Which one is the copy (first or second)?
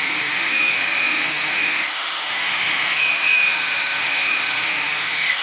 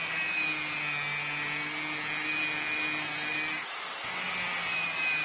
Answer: first